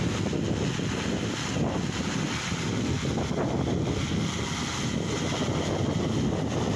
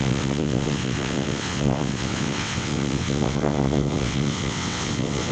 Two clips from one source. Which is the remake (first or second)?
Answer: second